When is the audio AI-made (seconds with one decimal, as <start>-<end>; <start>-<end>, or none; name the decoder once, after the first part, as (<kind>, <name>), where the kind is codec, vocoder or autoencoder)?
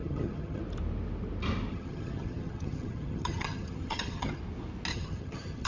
0.0-0.6 (vocoder, HiFi-GAN); 1.7-4.4; 4.9-5.7